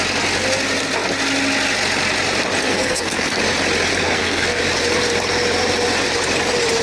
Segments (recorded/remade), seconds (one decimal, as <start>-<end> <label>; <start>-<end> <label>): 0.0-2.6 recorded; 2.6-3.4 remade; 3.4-3.9 recorded; 3.9-4.6 remade; 4.6-6.8 recorded